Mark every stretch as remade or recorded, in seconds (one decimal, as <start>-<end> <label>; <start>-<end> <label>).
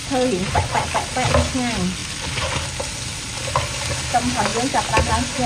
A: 0.0-0.7 remade; 0.7-5.5 recorded